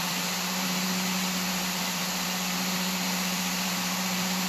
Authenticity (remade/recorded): remade